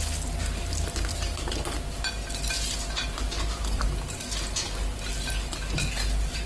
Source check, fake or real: real